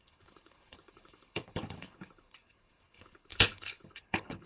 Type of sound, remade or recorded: remade